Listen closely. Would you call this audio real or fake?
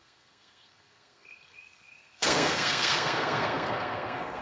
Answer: fake